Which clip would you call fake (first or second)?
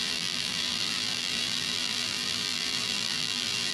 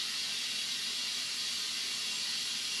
first